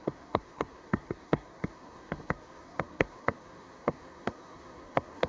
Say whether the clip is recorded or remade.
remade